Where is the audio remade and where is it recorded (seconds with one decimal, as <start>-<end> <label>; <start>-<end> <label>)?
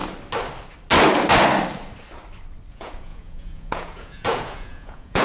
0.0-2.7 recorded; 2.7-5.2 remade